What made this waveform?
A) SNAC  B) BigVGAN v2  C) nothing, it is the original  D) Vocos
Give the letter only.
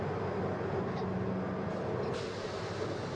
C